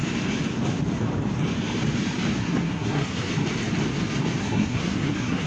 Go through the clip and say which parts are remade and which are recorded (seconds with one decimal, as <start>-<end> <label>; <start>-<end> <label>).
0.0-2.4 recorded; 2.4-3.3 remade; 3.3-4.4 recorded; 4.4-5.5 remade